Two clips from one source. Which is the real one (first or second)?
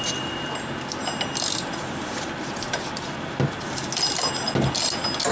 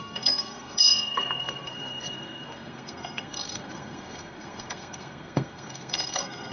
first